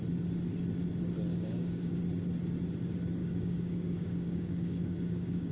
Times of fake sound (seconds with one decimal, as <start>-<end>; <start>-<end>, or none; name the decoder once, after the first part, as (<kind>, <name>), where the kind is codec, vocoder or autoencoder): 1.3-2.0 (codec, DAC); 3.2-5.5